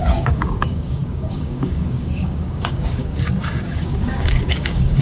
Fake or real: fake